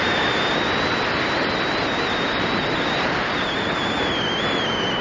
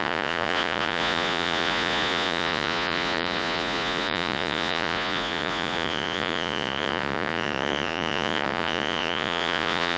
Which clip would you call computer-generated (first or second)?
second